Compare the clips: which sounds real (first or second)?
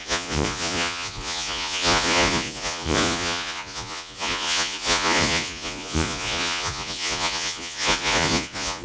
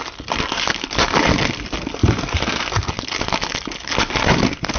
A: second